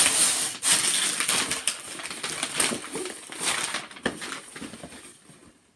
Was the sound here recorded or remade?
recorded